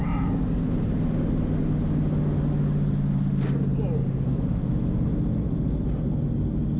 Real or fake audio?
real